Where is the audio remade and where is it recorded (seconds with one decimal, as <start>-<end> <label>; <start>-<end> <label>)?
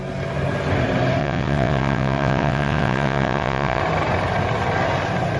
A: 0.0-1.2 recorded; 1.2-3.8 remade; 3.8-5.4 recorded